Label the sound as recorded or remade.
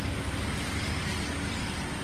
recorded